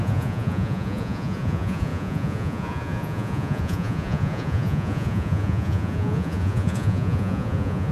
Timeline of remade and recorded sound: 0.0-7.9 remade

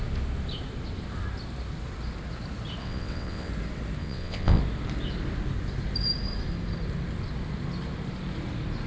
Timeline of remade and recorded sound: 0.0-2.8 recorded; 2.8-3.5 remade; 3.5-4.0 recorded; 4.0-4.6 remade; 4.6-8.9 recorded

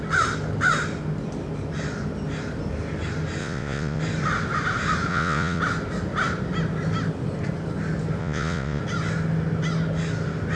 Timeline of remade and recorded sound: 0.0-3.4 recorded; 3.4-4.0 remade; 4.0-5.1 recorded; 5.1-5.6 remade; 5.6-8.2 recorded; 8.2-8.8 remade; 8.8-10.6 recorded

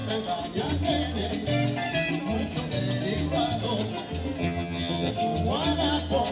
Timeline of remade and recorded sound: 0.0-4.4 recorded; 4.4-5.1 remade; 5.1-6.3 recorded

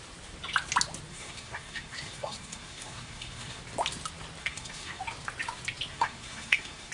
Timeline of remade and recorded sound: 0.0-1.1 recorded; 1.1-3.6 remade; 3.6-4.4 recorded; 4.4-5.0 remade; 5.0-5.9 recorded; 5.9-6.9 remade

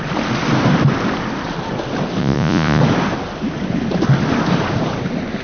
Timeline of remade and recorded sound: 0.0-2.2 recorded; 2.2-2.8 remade; 2.8-5.4 recorded

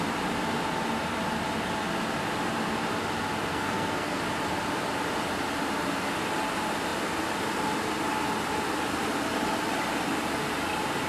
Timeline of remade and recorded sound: 0.0-3.5 recorded; 3.5-4.2 remade; 4.2-11.1 recorded

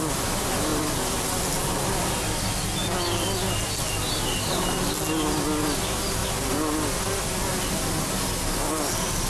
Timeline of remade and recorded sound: 0.0-9.3 recorded